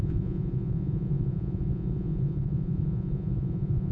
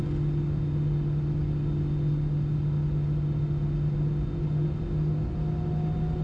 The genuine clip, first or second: second